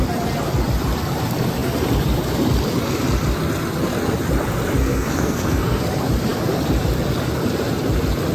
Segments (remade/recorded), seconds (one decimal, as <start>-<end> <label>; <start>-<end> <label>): 0.0-4.8 recorded; 4.8-5.8 remade; 5.8-8.3 recorded